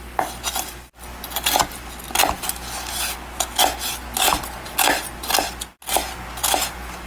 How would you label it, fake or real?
real